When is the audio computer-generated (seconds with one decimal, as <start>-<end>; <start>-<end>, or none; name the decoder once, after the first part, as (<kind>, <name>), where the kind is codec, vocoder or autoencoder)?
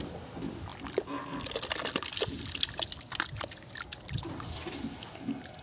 none